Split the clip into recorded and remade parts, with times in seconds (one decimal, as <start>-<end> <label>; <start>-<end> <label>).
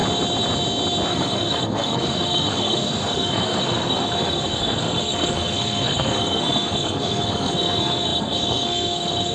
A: 0.0-1.1 recorded; 1.1-9.3 remade